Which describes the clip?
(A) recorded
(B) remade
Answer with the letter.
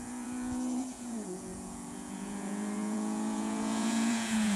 B